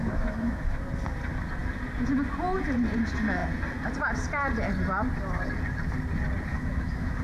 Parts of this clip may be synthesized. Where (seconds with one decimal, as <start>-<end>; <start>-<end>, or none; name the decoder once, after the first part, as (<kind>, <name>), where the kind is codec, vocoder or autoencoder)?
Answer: 0.0-0.8 (autoencoder, DAC-VAE); 6.5-7.2

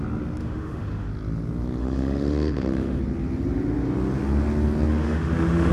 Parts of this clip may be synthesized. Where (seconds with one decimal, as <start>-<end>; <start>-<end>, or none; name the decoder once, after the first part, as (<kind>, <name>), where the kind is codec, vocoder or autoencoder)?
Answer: 0.4-1.1 (autoencoder, DAC-VAE); 1.8-3.0; 4.9-5.7

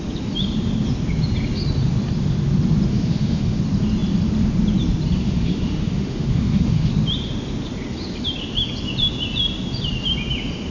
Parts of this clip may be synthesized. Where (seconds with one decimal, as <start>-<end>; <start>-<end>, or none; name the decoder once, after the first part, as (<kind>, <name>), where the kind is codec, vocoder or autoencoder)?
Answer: 2.9-3.6 (autoencoder, DAC-VAE); 5.2-6.9

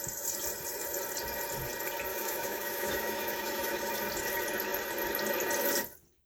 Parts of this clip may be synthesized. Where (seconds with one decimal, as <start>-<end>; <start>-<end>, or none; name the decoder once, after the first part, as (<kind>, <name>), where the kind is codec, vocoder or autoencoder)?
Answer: 2.1-3.9 (autoencoder, DAC-VAE)

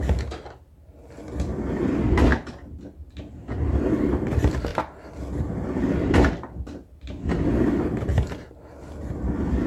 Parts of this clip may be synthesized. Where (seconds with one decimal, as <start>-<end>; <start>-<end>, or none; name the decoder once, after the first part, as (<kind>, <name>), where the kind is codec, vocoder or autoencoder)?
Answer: none

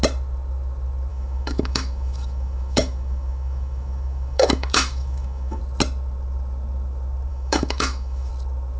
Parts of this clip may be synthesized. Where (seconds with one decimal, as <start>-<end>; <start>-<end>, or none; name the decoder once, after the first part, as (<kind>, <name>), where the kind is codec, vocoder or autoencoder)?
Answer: 1.1-5.6 (autoencoder, DAC-VAE); 7.3-8.3

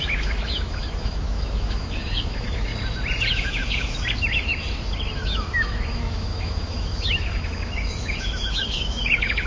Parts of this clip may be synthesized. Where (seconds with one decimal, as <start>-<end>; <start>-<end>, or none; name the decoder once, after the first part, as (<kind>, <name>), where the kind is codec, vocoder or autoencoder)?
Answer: 0.0-2.7 (autoencoder, DAC-VAE); 3.3-4.5; 5.2-9.5

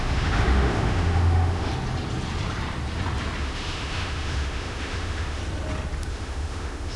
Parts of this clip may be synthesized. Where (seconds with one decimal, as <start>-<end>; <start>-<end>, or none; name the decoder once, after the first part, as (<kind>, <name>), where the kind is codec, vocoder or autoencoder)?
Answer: 0.0-1.7 (autoencoder, DAC-VAE); 3.4-5.4; 6.1-7.0